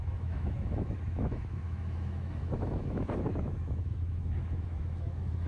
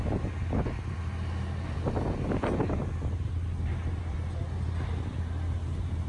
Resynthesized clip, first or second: first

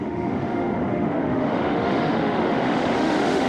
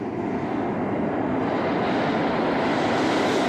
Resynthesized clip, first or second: first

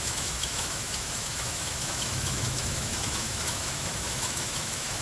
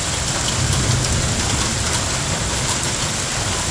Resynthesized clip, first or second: first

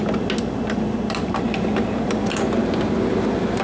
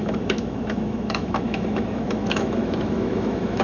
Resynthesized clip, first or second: second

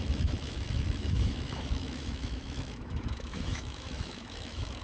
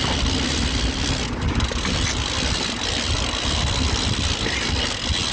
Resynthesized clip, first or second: first